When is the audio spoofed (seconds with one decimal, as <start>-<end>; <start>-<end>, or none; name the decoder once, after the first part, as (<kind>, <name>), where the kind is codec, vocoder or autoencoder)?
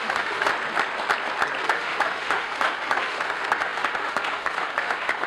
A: 0.0-0.5 (autoencoder, DAC-VAE); 1.6-5.3